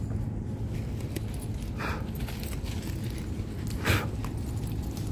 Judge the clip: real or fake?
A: real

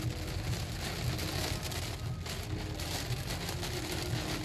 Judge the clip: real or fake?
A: real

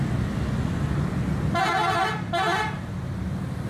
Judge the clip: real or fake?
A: real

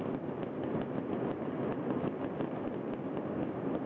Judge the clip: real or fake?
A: real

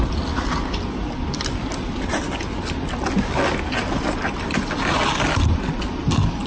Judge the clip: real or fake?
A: real